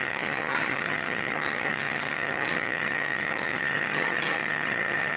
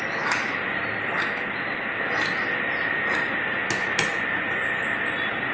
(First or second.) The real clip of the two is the second